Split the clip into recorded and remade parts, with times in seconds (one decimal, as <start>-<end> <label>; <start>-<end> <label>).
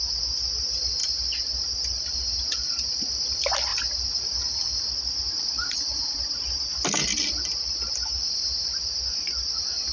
0.0-1.0 recorded; 1.0-2.1 remade; 2.1-3.7 recorded; 3.7-7.2 remade; 7.2-9.9 recorded